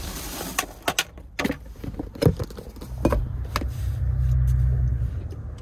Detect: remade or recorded recorded